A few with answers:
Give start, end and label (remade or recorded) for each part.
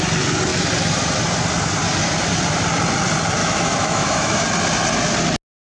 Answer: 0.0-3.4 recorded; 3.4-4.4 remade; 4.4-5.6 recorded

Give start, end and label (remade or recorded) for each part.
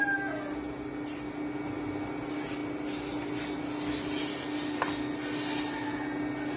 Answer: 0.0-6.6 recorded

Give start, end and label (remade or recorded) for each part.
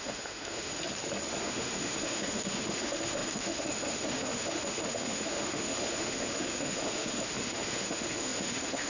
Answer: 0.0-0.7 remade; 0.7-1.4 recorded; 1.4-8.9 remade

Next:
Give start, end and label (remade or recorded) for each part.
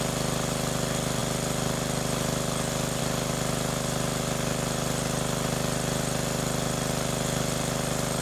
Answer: 0.0-8.2 recorded